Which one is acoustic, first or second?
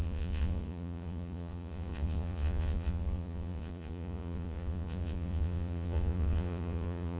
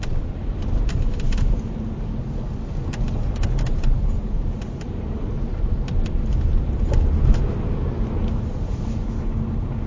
second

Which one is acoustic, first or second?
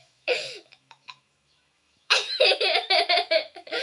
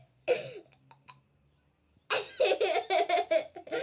second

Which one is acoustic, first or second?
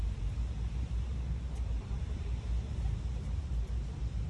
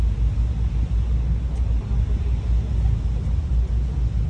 second